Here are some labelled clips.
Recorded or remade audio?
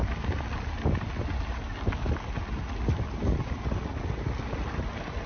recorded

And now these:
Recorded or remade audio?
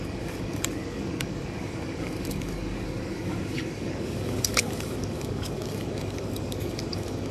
remade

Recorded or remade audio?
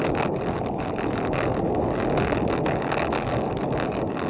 remade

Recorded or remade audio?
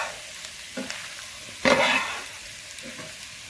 recorded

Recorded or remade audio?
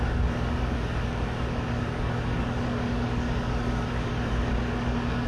remade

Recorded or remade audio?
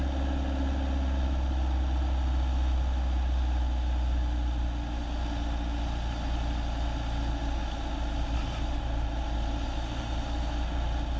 recorded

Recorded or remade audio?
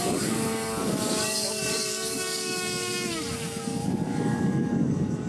remade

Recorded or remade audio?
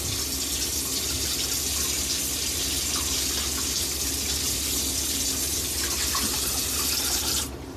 recorded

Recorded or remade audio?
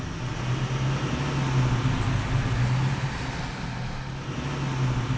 recorded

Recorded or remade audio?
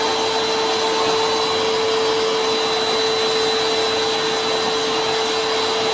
recorded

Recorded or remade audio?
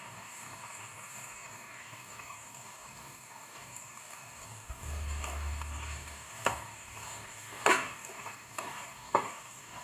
remade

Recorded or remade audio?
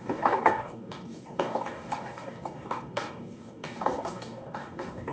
remade